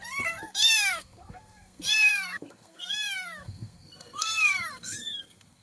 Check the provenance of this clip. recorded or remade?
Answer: remade